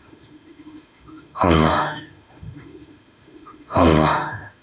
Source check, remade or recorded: remade